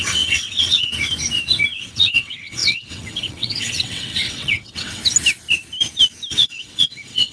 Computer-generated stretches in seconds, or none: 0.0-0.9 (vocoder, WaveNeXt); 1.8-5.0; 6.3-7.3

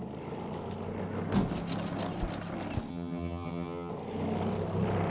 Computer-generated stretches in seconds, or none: 2.9-3.9 (vocoder, HiFi-GAN)

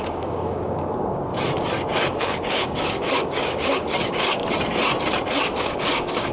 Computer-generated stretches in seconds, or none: 0.0-1.3 (codec, DAC); 2.2-4.4; 5.6-6.3

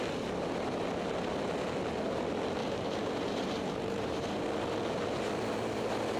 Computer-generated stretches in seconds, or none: 2.6-4.3 (vocoder, BigVGAN v2)